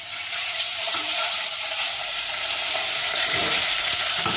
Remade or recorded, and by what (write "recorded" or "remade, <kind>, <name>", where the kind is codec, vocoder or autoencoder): remade, vocoder, BigVGAN v2